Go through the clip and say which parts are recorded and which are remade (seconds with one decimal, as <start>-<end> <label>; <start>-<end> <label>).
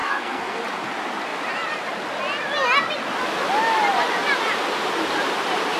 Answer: 0.0-0.6 remade; 0.6-5.8 recorded